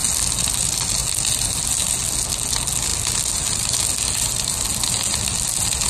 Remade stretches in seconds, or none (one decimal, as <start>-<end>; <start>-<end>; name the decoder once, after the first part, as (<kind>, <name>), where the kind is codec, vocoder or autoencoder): none

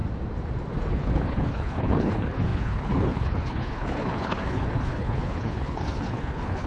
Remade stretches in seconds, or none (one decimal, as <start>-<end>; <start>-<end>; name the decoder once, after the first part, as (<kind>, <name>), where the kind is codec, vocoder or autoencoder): 0.9-6.7 (codec, HILCodec)

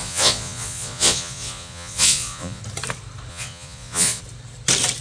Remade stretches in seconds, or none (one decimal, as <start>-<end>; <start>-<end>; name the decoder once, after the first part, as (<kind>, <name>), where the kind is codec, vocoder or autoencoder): 0.0-2.6 (vocoder, Vocos); 3.3-4.2

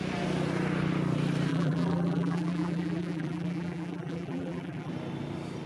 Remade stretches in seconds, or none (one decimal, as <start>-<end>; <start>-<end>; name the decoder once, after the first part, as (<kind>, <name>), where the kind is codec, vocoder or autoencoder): 1.5-4.9 (vocoder, BigVGAN v2)

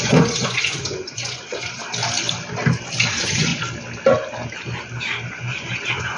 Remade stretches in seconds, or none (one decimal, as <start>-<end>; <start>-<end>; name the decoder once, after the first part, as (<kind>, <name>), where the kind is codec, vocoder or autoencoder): 0.0-1.8 (vocoder, Vocos); 3.1-3.5; 5.3-6.2

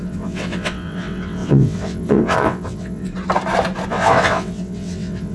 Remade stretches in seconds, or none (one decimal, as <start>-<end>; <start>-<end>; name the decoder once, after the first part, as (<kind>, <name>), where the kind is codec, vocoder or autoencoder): 0.0-3.1 (vocoder, WaveNeXt); 3.9-5.3